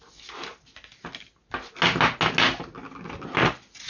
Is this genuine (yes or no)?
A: yes